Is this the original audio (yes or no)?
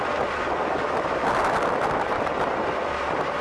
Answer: yes